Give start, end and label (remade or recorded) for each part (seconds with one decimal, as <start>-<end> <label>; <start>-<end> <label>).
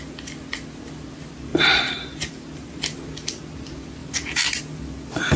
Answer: 0.0-1.5 recorded; 1.5-2.8 remade; 2.8-4.0 recorded; 4.0-4.6 remade; 4.6-5.4 recorded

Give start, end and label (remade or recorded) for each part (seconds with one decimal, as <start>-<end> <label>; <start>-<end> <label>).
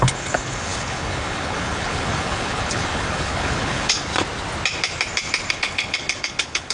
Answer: 0.0-4.1 remade; 4.1-5.5 recorded; 5.5-6.7 remade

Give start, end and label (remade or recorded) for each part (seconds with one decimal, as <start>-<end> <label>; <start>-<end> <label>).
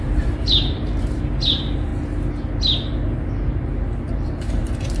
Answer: 0.0-1.9 remade; 1.9-4.1 recorded; 4.1-5.0 remade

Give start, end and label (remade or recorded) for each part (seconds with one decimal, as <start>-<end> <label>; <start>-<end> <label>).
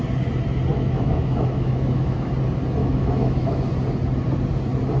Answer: 0.0-0.7 recorded; 0.7-2.3 remade; 2.3-2.8 recorded; 2.8-3.6 remade; 3.6-5.0 recorded